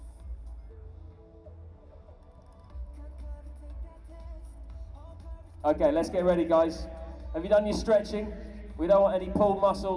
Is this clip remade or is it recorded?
recorded